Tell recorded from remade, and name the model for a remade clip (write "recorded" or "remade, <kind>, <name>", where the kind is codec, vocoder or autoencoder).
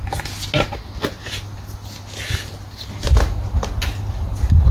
recorded